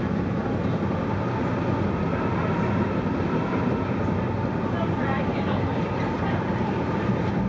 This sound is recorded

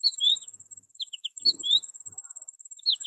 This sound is remade